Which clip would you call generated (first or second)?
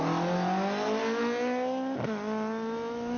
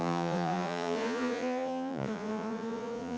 second